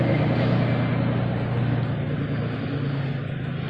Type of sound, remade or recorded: recorded